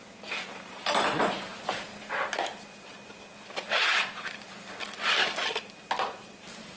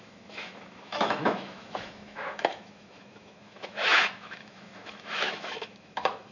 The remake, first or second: second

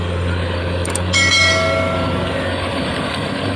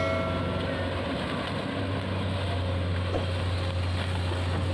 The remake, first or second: first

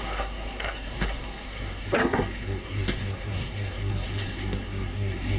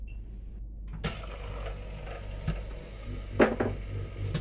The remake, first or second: first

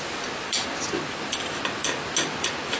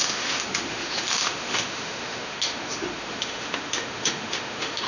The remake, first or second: second